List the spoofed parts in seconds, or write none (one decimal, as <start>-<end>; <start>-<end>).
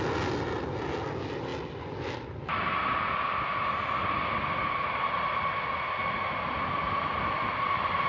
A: none